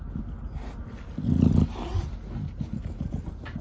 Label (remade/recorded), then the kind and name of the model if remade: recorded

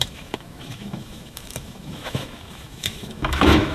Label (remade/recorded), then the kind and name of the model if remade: remade, autoencoder, DAC-VAE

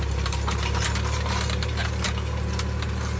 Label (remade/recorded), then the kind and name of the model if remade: recorded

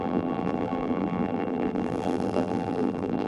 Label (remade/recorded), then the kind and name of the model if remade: remade, vocoder, BigVGAN v2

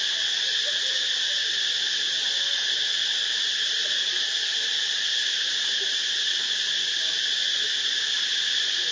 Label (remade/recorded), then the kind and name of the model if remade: recorded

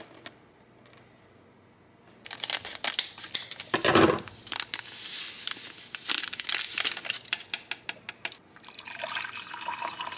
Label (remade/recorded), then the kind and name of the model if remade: recorded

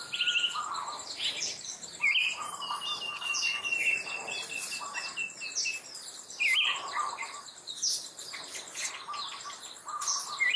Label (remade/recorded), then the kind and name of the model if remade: recorded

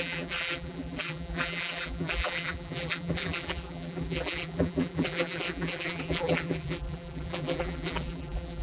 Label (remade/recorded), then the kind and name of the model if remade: remade, vocoder, BigVGAN v2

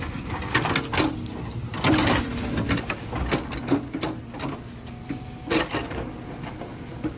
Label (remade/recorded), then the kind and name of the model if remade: recorded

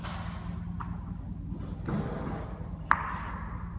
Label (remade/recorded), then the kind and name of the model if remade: recorded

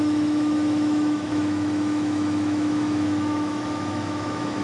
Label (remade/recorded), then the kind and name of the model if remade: remade, autoencoder, DAC-VAE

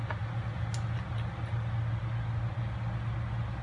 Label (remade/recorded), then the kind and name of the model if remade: recorded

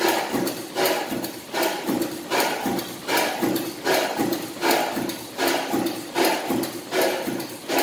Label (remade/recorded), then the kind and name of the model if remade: recorded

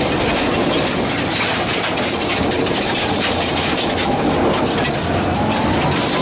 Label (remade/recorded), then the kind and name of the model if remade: recorded